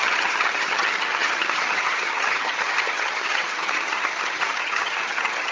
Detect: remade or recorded remade